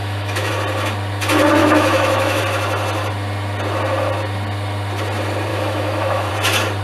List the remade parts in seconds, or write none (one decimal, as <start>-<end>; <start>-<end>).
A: 0.0-0.5; 1.6-2.4; 5.5-6.3